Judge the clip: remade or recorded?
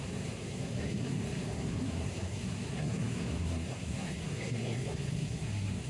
remade